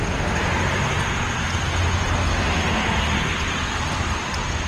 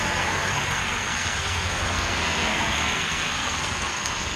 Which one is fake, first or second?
second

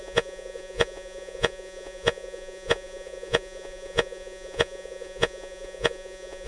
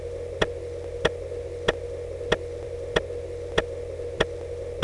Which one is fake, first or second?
first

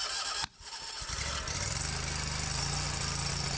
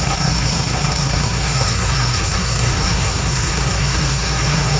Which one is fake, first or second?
second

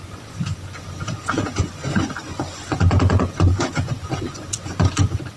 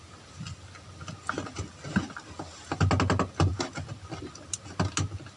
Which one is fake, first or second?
first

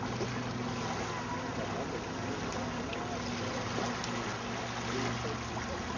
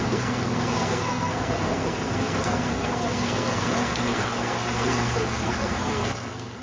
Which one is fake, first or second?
second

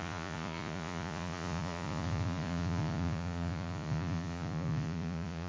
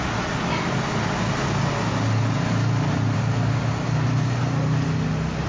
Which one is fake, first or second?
first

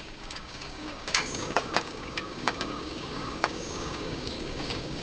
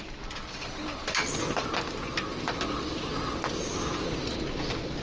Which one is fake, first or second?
first